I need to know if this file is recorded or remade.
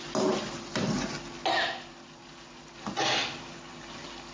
recorded